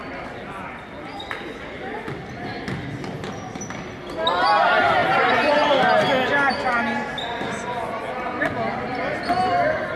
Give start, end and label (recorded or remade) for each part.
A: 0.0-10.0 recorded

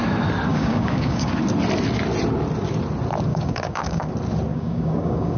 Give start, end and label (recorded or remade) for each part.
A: 0.0-0.5 recorded; 0.5-1.3 remade; 1.3-3.3 recorded; 3.3-4.1 remade; 4.1-4.5 recorded; 4.5-5.4 remade

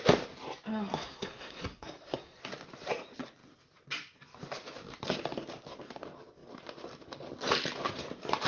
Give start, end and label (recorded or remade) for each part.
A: 0.0-0.7 recorded; 0.7-2.4 remade; 2.4-8.5 recorded

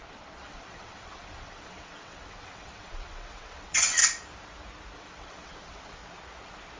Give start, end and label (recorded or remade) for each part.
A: 0.0-4.0 remade; 4.0-5.0 recorded; 5.0-6.0 remade; 6.0-6.8 recorded

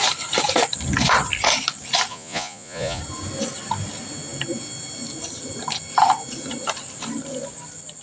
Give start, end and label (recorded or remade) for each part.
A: 0.0-2.1 recorded; 2.1-3.0 remade; 3.0-8.0 recorded